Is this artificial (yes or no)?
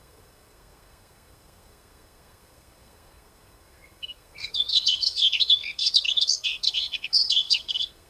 yes